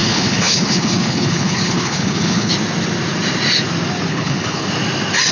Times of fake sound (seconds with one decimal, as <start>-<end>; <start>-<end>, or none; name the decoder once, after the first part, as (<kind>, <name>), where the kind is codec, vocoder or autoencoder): 0.0-2.5 (codec, HILCodec); 4.1-4.7